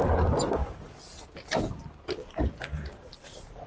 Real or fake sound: real